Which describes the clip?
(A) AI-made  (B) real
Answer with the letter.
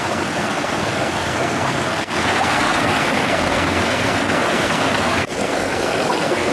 A